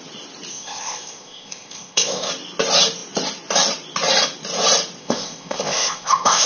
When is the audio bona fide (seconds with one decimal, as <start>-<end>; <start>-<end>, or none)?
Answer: 0.0-0.5; 2.3-5.0